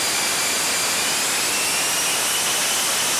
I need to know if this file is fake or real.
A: real